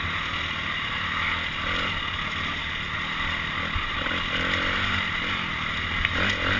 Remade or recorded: recorded